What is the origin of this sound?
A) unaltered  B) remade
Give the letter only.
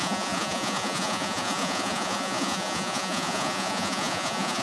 B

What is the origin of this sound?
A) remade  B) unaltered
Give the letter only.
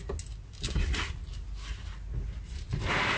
B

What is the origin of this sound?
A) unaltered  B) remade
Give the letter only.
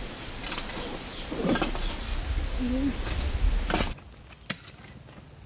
A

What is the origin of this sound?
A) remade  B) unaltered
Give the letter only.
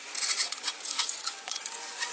A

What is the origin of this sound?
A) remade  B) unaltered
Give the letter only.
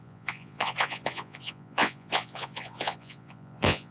A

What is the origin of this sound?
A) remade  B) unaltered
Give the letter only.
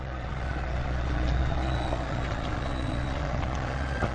A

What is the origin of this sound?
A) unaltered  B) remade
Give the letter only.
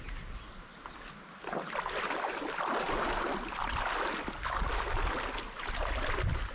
A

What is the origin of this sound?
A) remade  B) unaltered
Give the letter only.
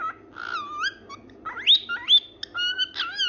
B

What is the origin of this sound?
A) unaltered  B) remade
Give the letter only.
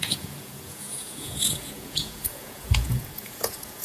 B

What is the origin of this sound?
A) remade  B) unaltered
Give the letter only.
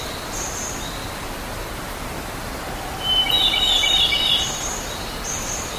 B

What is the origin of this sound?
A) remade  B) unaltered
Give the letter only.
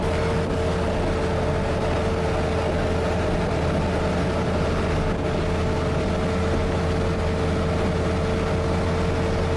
B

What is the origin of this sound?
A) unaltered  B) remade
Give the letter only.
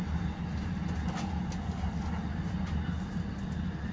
A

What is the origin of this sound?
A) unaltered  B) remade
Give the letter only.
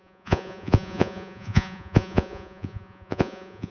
B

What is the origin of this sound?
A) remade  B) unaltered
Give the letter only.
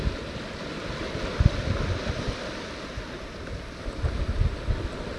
B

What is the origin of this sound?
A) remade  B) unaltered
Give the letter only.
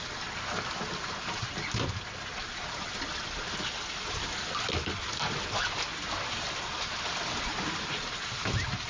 B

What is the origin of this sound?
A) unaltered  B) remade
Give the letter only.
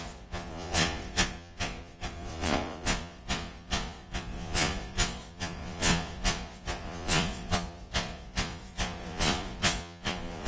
B